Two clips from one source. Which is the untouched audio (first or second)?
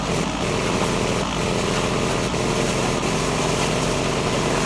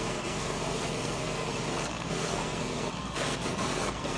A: first